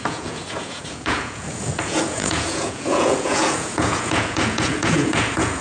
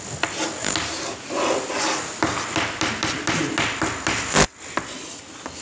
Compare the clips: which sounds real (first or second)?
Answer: second